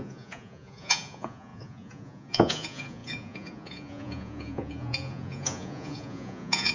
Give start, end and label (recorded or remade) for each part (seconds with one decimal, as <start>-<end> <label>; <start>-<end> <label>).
0.0-6.7 remade